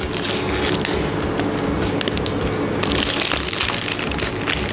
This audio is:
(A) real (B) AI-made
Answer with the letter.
A